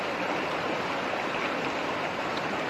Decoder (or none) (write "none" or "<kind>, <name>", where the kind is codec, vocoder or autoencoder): none